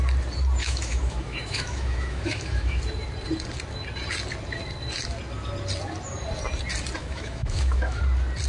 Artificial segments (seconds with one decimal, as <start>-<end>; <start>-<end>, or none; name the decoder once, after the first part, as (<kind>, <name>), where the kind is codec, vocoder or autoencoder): 0.6-2.8 (autoencoder, DAC-VAE); 7.0-8.0

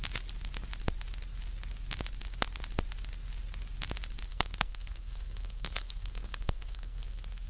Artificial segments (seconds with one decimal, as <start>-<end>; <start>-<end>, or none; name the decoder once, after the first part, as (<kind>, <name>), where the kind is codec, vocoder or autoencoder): 4.3-7.5 (codec, SNAC)

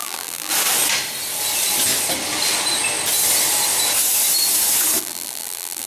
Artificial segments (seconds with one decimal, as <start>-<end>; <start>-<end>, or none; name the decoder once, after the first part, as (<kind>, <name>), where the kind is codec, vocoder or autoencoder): 0.0-0.5 (vocoder, BigVGAN v2); 5.0-5.9

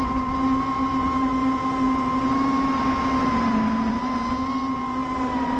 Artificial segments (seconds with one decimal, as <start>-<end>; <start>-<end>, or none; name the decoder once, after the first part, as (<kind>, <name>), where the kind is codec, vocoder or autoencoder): none

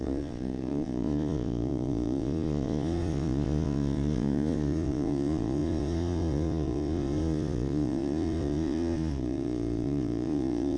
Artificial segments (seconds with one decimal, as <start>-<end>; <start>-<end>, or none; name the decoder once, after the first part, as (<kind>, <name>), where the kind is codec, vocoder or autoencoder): 0.0-10.8 (vocoder, Vocos)

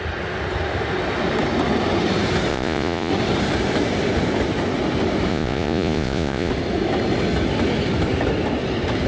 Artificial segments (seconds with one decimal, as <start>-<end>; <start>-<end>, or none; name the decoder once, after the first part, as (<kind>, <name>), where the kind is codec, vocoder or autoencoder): 2.5-3.1 (vocoder, Vocos); 5.3-6.5